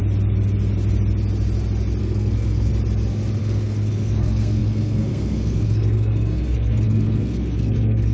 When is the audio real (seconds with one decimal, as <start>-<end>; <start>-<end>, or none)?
0.0-2.0; 2.7-3.4

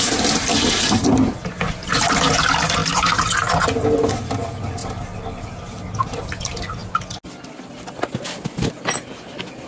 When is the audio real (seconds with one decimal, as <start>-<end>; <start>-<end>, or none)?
0.0-9.7

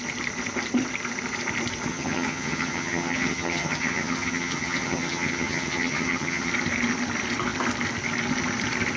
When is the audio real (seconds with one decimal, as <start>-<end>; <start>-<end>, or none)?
0.0-1.9; 6.5-9.0

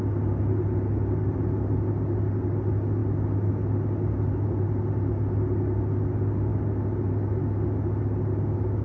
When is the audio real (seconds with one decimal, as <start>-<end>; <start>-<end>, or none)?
0.0-8.8